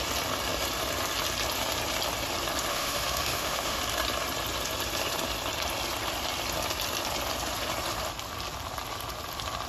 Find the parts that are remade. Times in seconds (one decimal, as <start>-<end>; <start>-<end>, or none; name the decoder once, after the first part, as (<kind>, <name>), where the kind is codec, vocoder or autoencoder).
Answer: 2.7-3.8 (autoencoder, DAC-VAE)